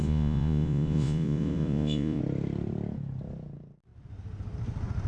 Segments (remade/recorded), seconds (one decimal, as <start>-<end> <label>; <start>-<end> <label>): 0.0-2.2 remade; 2.2-5.1 recorded